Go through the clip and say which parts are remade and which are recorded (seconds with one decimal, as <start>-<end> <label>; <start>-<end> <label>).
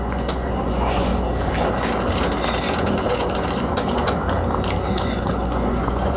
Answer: 0.0-1.1 remade; 1.1-2.8 recorded; 2.8-4.2 remade; 4.2-4.9 recorded; 4.9-6.2 remade